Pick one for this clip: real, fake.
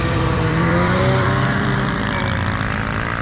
fake